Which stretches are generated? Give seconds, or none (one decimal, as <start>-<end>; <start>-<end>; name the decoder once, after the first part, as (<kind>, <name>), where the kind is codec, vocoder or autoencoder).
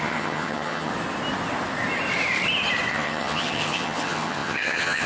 0.0-0.9 (vocoder, HiFi-GAN); 2.9-5.1